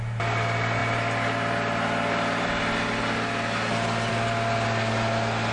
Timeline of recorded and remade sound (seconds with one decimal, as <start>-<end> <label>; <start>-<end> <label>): 0.0-5.5 recorded

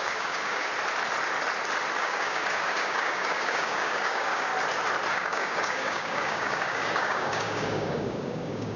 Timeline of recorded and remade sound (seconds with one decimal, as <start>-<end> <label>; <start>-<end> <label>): 0.0-0.7 remade; 0.7-2.0 recorded; 2.0-4.5 remade; 4.5-5.1 recorded; 5.1-8.8 remade